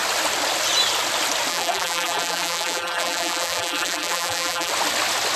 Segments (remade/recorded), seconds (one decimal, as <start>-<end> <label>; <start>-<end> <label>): 0.0-1.5 recorded; 1.5-4.7 remade; 4.7-5.4 recorded